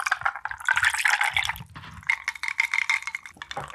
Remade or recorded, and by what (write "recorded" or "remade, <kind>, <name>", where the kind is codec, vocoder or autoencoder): recorded